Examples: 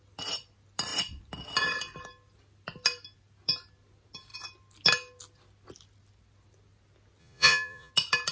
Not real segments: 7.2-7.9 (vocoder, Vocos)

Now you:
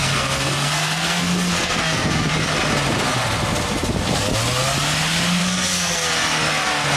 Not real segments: 0.0-2.3 (codec, SNAC); 5.4-6.1